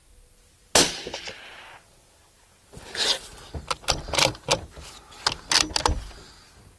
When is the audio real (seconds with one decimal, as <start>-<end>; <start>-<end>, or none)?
0.0-6.8